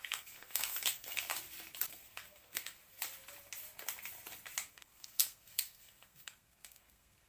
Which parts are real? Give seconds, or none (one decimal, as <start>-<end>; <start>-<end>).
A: 1.3-1.9; 2.8-4.7